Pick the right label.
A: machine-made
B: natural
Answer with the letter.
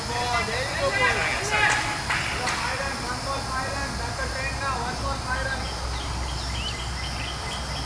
B